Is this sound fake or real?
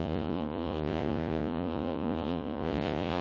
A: fake